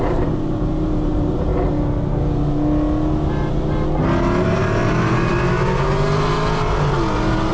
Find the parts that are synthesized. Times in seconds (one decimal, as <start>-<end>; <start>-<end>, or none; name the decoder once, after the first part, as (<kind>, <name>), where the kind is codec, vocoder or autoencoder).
0.0-1.5 (vocoder, BigVGAN v2); 4.4-5.3